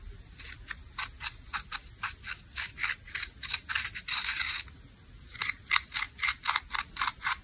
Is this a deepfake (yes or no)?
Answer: no